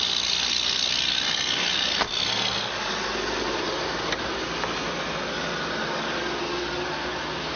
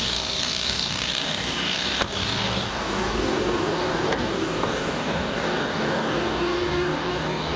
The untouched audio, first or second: first